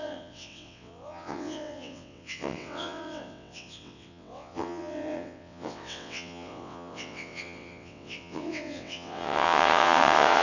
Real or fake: fake